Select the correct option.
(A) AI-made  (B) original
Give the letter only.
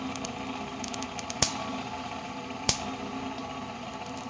A